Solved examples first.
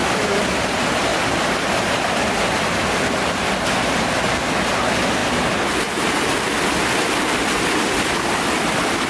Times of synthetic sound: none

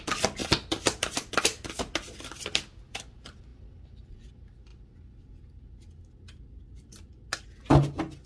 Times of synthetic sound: 0.4-1.4 (vocoder, BigVGAN v2)

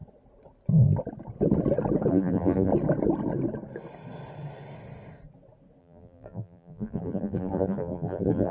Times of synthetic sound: 2.1-2.7 (vocoder, BigVGAN v2); 5.8-8.5

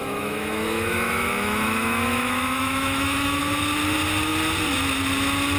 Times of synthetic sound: 0.0-3.4 (autoencoder, DAC-VAE)

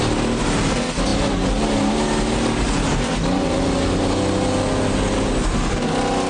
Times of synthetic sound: none

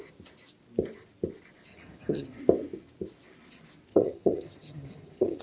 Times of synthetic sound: 1.7-2.4 (vocoder, HiFi-GAN); 3.9-5.4

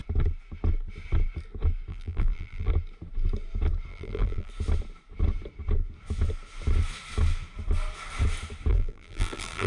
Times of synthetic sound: 1.9-2.7 (vocoder, BigVGAN v2); 3.9-4.5; 8.7-9.7